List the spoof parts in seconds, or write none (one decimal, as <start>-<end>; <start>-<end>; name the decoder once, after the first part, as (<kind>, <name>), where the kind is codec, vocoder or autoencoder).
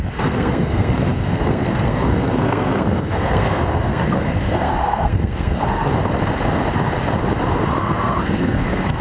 0.0-5.9 (codec, SNAC); 7.8-9.0